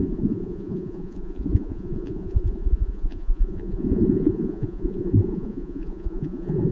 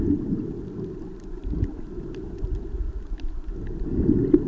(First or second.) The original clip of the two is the second